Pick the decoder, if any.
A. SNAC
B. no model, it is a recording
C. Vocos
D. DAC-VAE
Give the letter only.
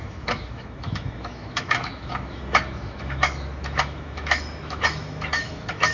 D